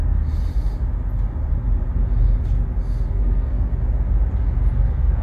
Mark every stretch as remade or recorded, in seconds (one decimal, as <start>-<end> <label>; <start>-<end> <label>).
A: 0.0-3.1 recorded; 3.1-3.7 remade; 3.7-4.8 recorded; 4.8-5.2 remade